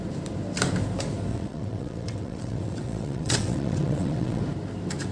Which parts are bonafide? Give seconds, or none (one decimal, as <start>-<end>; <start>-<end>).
0.0-1.3; 4.4-5.1